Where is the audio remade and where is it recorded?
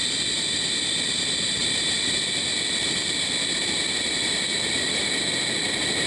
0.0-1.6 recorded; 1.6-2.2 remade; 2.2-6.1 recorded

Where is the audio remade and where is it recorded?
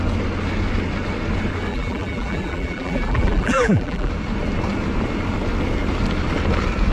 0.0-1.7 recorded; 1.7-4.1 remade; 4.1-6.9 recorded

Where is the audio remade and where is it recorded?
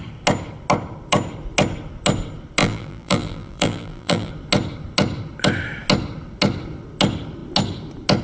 0.0-2.6 recorded; 2.6-4.3 remade; 4.3-8.2 recorded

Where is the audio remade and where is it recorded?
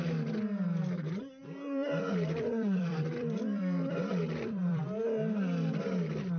0.0-1.4 recorded; 1.4-4.8 remade; 4.8-6.4 recorded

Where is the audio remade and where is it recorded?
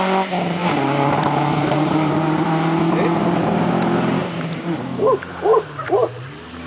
0.0-0.6 recorded; 0.6-3.7 remade; 3.7-4.2 recorded; 4.2-5.9 remade; 5.9-6.7 recorded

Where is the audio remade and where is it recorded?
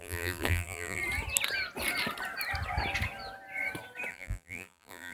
0.0-1.0 remade; 1.0-4.1 recorded; 4.1-5.1 remade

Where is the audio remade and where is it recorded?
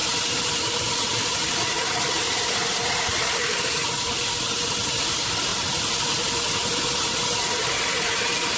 0.0-8.6 recorded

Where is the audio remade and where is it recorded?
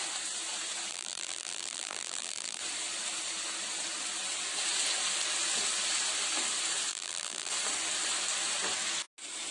0.0-0.9 recorded; 0.9-2.6 remade; 2.6-6.9 recorded; 6.9-7.5 remade; 7.5-9.5 recorded